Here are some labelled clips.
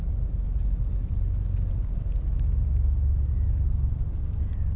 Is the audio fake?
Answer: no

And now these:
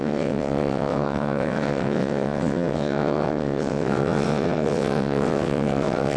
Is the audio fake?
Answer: yes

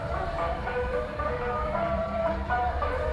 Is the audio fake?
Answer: yes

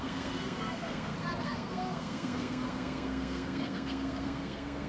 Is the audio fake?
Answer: yes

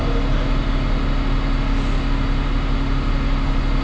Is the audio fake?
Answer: no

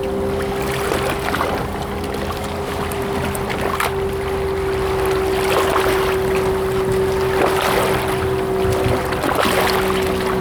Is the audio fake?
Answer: no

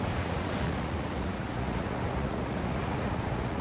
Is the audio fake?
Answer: yes